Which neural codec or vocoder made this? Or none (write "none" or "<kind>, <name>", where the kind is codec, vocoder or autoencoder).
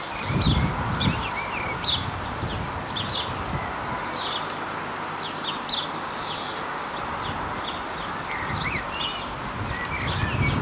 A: none